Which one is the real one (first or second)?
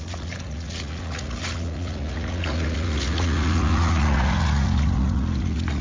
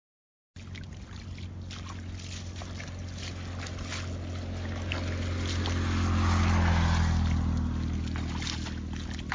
second